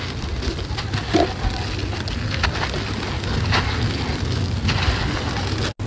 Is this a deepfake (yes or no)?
no